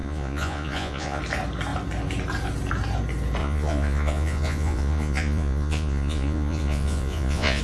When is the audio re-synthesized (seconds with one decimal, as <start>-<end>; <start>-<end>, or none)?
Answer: 0.0-1.2; 3.4-7.6